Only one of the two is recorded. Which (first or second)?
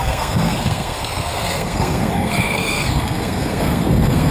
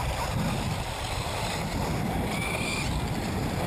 second